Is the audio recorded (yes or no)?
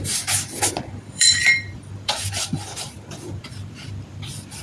no